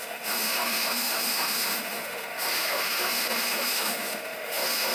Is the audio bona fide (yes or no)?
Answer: no